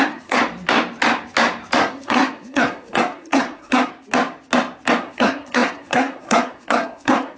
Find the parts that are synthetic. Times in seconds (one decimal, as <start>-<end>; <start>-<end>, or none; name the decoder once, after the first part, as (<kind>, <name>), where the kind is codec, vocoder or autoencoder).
0.0-0.4 (codec, SNAC); 1.8-3.9; 5.0-7.4